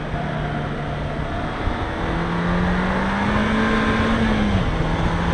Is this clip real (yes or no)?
yes